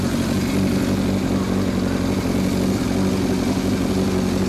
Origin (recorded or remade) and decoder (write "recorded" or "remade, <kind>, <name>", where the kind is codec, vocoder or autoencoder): recorded